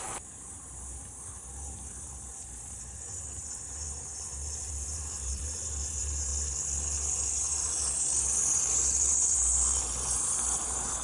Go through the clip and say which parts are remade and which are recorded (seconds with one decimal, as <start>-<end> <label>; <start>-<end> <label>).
0.0-6.3 remade; 6.3-7.3 recorded; 7.3-11.0 remade